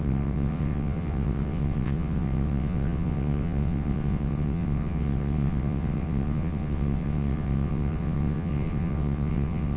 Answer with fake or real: fake